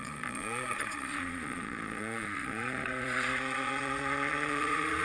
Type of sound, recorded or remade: remade